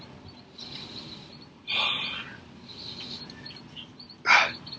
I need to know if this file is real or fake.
real